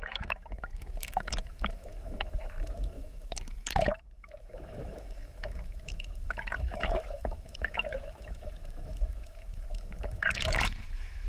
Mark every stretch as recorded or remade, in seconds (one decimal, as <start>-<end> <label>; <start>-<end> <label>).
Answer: 0.0-11.3 remade

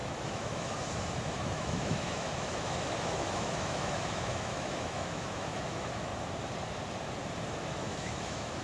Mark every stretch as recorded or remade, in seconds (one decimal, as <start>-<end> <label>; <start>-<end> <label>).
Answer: 0.0-6.1 remade; 6.1-7.5 recorded; 7.5-8.6 remade

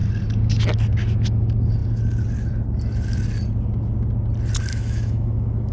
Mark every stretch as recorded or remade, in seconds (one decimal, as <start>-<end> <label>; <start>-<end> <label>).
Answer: 0.0-4.7 recorded; 4.7-5.7 remade

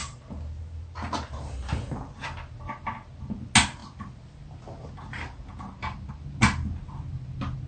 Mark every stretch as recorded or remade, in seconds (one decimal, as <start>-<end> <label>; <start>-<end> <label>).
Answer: 0.0-7.7 recorded

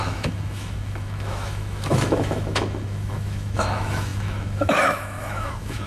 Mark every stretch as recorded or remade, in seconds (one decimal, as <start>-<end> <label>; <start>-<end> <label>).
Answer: 0.0-5.9 remade

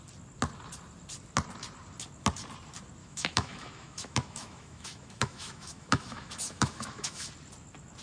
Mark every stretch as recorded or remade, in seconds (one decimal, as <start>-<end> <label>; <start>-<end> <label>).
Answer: 0.0-3.0 recorded; 3.0-7.3 remade; 7.3-8.0 recorded

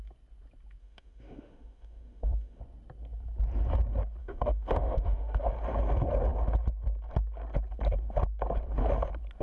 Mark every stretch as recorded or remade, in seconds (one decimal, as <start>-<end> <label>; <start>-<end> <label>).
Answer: 0.0-0.8 recorded; 0.8-2.6 remade; 2.6-4.2 recorded; 4.2-5.4 remade; 5.4-9.4 recorded